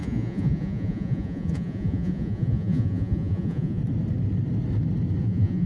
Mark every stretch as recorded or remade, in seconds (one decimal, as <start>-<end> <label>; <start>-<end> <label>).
0.0-3.8 remade; 3.8-5.2 recorded; 5.2-5.7 remade